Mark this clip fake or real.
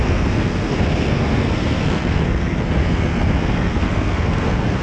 fake